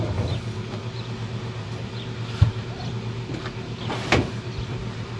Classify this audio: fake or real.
fake